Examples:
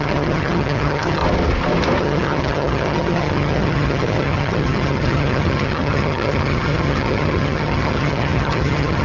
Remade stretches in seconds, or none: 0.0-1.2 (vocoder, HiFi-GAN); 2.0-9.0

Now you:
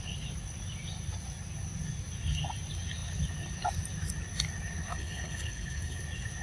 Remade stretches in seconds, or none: 4.9-6.0 (codec, HILCodec)

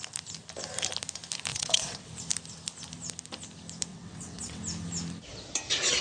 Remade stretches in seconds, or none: 1.5-2.1 (vocoder, WaveNeXt); 3.9-4.6

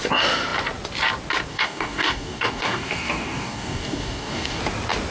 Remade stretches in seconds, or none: 1.5-4.6 (codec, DAC)

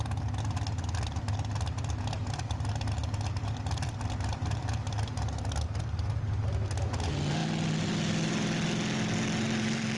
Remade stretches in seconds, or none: none

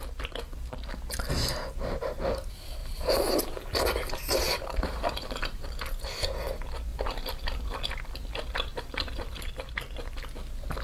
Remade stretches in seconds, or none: 2.8-5.7 (vocoder, BigVGAN v2); 6.9-7.8; 8.7-9.5

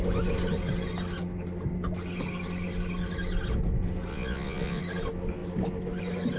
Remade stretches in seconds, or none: 4.1-4.8 (vocoder, Vocos)

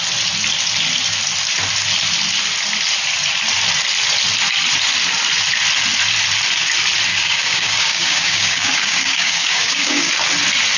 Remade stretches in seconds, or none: 7.1-10.1 (codec, DAC)